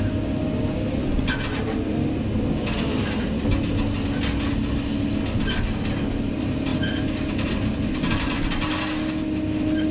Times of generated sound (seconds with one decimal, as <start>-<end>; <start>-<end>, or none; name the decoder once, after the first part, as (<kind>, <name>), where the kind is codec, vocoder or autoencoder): none